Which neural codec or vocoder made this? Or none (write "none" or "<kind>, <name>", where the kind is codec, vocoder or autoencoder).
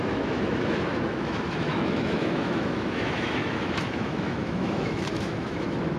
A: autoencoder, DAC-VAE